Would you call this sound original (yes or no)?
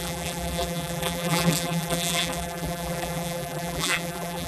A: no